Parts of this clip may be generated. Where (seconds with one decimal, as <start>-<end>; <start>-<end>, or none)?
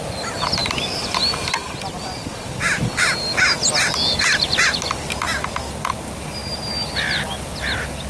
none